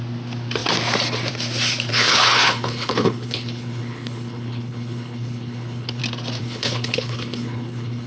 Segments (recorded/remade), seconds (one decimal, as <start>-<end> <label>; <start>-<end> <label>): 0.0-1.9 recorded; 1.9-6.0 remade; 6.0-6.4 recorded; 6.4-8.1 remade